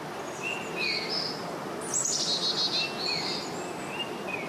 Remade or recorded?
recorded